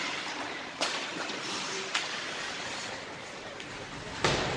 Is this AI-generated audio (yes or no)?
yes